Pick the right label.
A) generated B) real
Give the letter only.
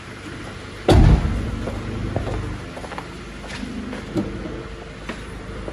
B